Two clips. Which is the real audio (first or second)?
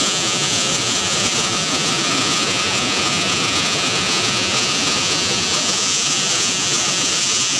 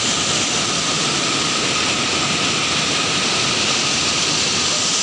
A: second